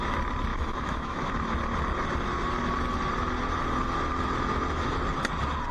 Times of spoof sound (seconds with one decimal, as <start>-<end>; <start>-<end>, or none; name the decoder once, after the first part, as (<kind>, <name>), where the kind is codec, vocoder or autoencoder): 0.5-1.3 (autoencoder, DAC-VAE)